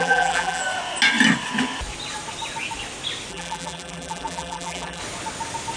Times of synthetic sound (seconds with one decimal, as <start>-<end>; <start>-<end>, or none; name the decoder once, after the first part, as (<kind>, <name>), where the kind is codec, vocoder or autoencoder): 0.0-0.6 (vocoder, BigVGAN v2); 3.3-5.0